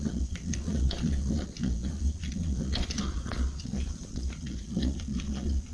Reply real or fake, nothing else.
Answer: fake